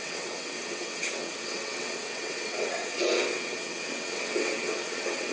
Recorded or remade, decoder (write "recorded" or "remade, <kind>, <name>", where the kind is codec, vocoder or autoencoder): remade, vocoder, WaveNeXt